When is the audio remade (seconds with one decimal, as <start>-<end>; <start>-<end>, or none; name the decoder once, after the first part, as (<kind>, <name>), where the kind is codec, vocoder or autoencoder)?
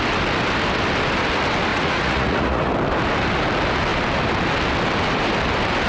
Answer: 1.7-2.7 (vocoder, Vocos)